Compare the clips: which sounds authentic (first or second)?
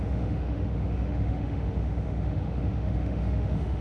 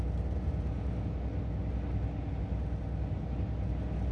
second